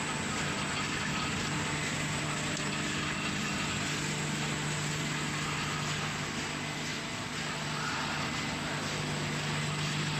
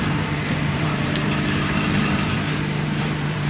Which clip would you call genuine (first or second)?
first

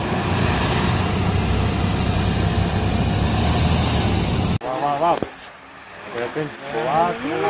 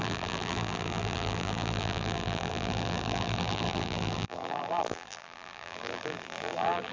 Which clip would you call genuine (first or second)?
first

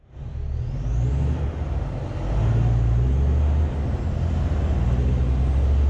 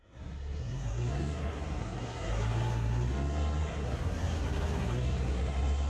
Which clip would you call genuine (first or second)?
first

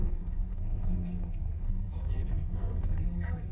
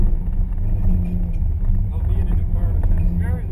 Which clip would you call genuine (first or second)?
second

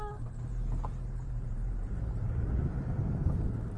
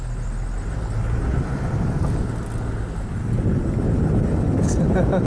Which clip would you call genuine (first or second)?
second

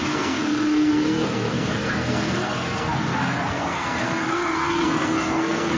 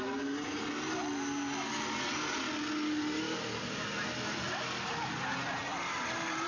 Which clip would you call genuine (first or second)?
second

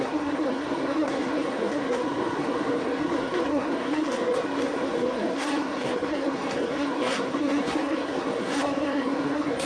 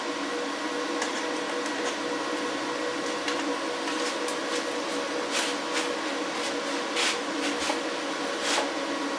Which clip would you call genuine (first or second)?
second